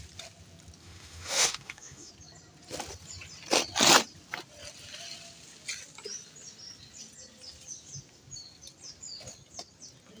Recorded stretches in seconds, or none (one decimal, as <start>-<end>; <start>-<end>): 0.0-0.8; 2.1-10.2

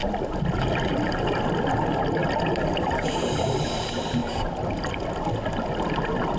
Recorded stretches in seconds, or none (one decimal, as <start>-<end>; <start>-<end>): 0.0-6.4